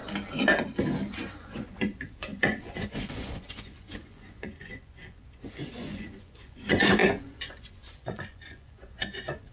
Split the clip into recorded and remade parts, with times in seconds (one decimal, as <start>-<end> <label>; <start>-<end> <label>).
0.0-1.4 recorded; 1.4-9.5 remade